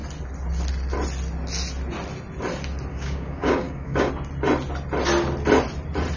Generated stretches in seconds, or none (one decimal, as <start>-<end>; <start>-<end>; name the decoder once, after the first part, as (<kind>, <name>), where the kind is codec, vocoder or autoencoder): 2.9-4.1 (codec, DAC)